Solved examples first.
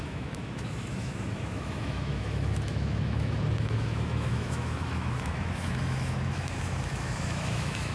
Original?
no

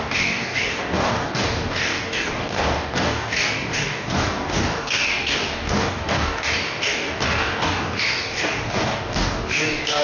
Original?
no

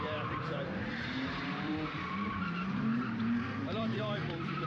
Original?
no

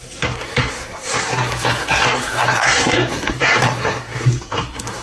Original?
no